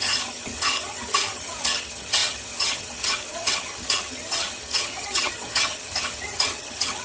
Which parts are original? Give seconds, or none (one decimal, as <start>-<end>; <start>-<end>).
none